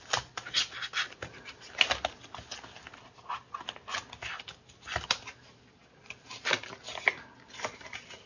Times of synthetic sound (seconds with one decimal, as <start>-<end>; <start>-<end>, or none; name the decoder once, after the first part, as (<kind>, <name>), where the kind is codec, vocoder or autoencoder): none